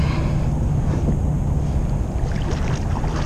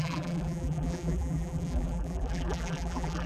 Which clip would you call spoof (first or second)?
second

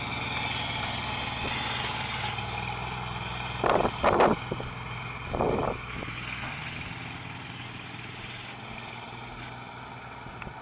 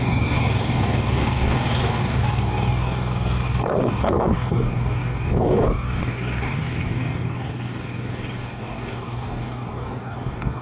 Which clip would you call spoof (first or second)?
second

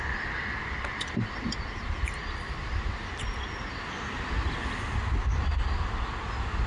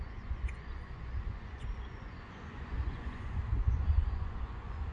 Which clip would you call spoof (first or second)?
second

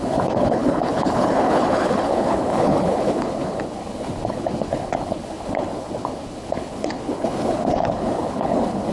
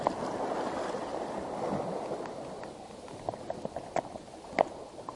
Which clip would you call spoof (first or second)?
first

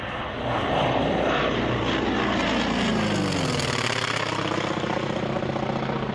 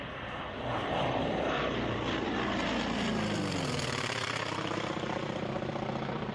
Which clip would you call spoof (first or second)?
second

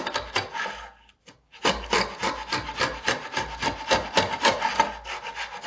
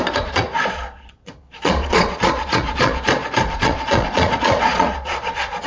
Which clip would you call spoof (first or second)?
second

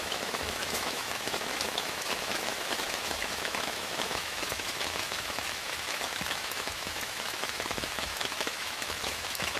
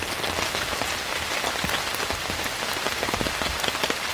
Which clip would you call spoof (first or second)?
first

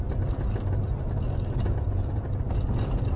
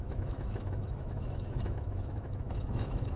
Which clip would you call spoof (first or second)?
second